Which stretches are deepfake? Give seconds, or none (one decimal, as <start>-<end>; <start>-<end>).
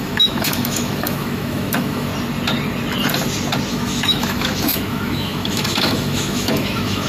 0.0-2.1; 3.7-7.1